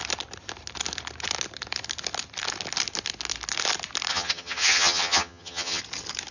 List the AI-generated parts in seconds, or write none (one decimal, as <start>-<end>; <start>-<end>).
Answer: 4.1-5.8